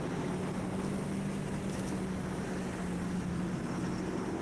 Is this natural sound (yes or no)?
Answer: yes